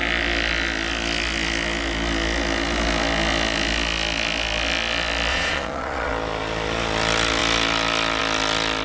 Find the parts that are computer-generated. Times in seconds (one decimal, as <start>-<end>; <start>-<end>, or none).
5.3-6.1